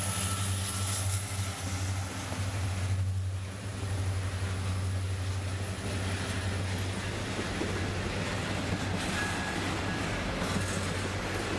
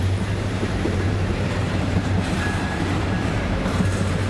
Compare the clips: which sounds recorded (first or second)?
first